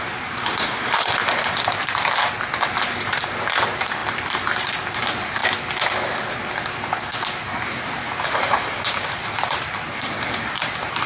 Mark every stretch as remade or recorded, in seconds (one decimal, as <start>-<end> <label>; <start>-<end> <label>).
0.0-1.2 remade; 1.2-2.8 recorded; 2.8-5.4 remade; 5.4-8.0 recorded; 8.0-11.1 remade